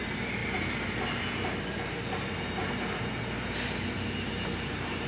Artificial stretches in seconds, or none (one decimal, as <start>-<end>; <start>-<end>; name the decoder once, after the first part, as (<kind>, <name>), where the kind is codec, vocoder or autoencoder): none

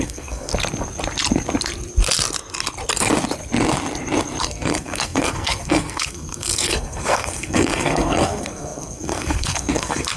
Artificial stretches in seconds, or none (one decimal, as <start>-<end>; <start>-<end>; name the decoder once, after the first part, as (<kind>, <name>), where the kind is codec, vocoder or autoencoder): 0.0-0.5 (codec, SNAC); 4.4-10.2